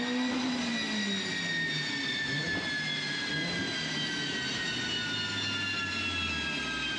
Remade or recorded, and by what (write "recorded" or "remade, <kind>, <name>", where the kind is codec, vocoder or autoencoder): recorded